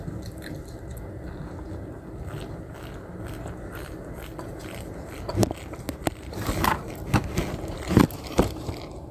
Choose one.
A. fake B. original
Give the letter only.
B